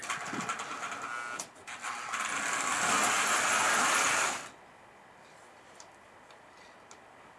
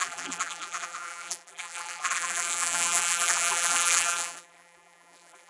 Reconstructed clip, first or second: second